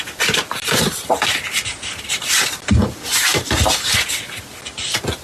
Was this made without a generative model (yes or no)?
no